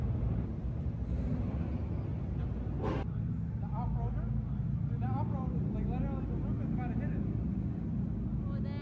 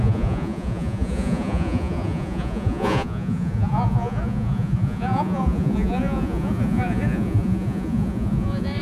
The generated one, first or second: second